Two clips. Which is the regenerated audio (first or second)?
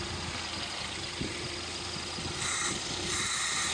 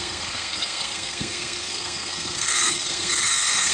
second